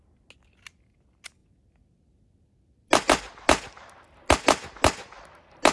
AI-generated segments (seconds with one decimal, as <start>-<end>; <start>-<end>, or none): none